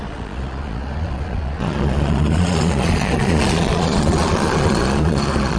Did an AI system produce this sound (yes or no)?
yes